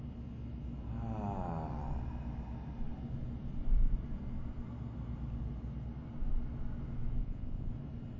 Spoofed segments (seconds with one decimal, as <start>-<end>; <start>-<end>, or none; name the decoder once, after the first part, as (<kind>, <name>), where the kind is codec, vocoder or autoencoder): 7.2-7.7 (vocoder, Vocos)